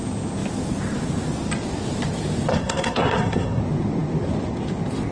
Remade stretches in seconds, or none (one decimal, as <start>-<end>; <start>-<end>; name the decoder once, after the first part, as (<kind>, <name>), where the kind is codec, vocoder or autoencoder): 2.5-3.6 (codec, SNAC)